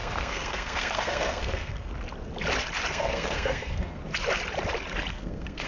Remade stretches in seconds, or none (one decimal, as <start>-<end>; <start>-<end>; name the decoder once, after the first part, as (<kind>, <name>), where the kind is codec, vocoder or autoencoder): 0.0-1.9 (codec, SNAC); 2.9-4.0; 5.1-5.7